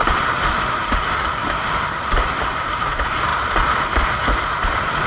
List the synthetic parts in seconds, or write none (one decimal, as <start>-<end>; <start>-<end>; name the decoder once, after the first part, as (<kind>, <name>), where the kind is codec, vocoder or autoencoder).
0.0-1.0 (vocoder, BigVGAN v2)